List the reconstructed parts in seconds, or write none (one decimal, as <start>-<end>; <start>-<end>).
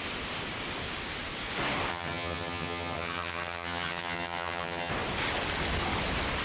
1.9-4.9